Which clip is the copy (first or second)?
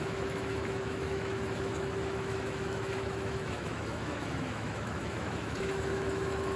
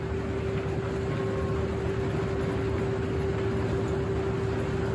first